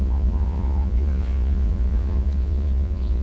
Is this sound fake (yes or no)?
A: yes